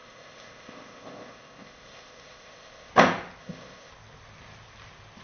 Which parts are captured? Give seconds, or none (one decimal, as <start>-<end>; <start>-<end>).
2.9-3.4; 3.9-5.2